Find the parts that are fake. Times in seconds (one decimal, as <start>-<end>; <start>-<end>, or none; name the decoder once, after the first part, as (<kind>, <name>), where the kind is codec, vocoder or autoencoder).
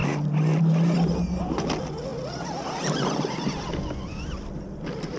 none